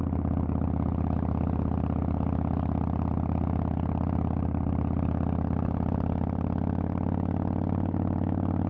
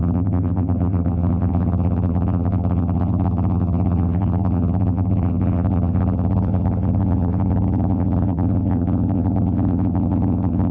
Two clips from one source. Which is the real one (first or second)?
first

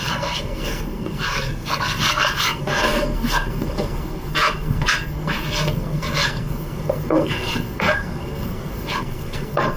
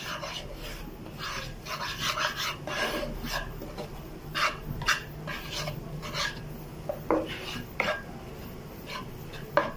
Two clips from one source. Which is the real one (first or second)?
second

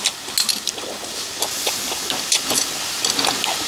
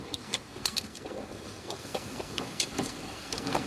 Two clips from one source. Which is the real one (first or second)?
first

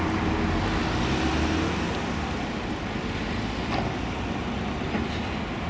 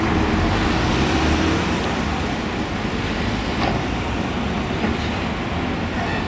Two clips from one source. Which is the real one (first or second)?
first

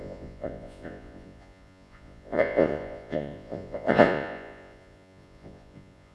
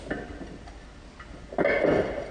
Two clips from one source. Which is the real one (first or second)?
second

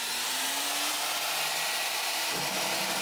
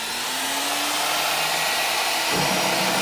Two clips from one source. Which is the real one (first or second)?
second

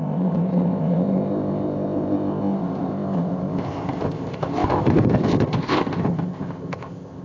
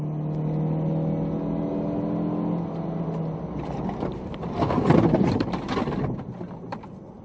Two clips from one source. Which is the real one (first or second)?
second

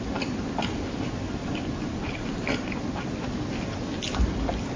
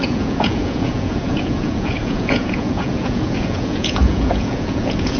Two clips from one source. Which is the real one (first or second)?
first